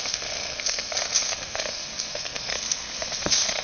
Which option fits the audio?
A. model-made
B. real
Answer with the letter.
A